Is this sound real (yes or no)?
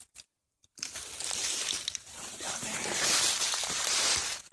no